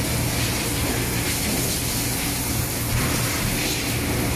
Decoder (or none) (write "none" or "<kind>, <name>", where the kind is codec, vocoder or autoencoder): none